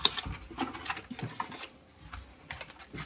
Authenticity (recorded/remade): recorded